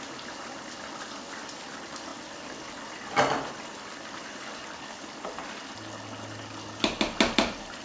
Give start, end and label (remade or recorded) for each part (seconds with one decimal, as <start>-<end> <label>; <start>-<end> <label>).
0.0-7.8 recorded